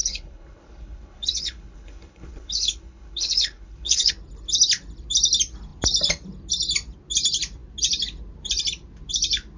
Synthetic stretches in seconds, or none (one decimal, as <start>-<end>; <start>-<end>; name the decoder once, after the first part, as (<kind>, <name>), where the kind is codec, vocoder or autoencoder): 0.0-4.1 (codec, HILCodec)